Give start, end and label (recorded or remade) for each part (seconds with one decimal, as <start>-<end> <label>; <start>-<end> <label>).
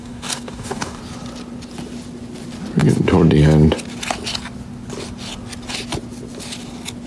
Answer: 0.0-1.0 remade; 1.0-7.1 recorded